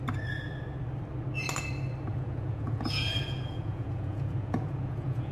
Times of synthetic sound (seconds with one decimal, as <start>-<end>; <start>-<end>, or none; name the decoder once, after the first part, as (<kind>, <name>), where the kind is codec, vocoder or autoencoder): 2.1-5.3 (vocoder, Vocos)